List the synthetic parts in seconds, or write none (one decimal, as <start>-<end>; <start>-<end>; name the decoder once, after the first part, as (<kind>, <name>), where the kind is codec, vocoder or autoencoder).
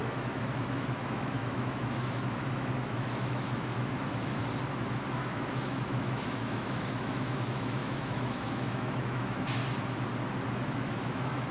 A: 0.0-4.4 (autoencoder, DAC-VAE); 5.1-9.6; 10.5-11.5